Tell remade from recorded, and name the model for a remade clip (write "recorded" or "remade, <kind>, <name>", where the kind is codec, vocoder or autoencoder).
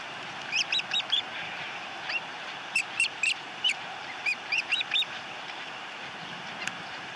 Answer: remade, vocoder, BigVGAN v2